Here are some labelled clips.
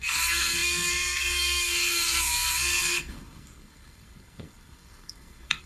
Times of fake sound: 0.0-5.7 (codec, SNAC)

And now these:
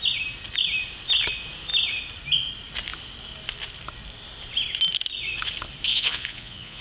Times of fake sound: 5.9-6.8 (vocoder, Vocos)

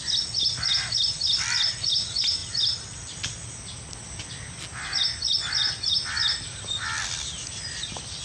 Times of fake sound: none

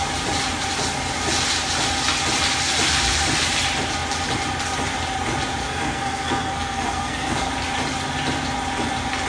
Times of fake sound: 5.6-7.5 (codec, SNAC)

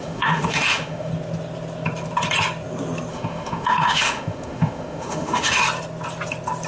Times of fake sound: 0.0-1.1 (autoencoder, DAC-VAE); 3.1-5.6

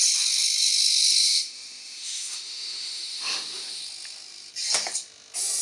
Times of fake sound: 1.2-3.8 (autoencoder, DAC-VAE)

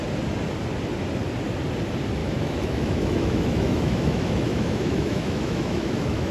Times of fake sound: 2.2-6.3 (autoencoder, DAC-VAE)

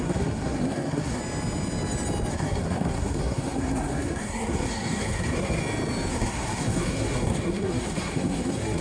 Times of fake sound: 0.0-1.2 (codec, SNAC); 2.3-5.6; 6.1-8.8